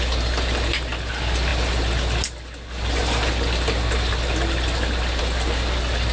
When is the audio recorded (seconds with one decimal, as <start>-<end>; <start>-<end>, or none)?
0.0-6.1